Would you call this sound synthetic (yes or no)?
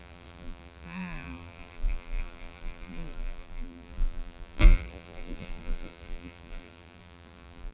yes